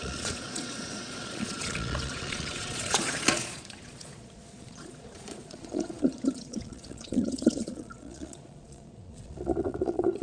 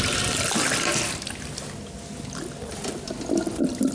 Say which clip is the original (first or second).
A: second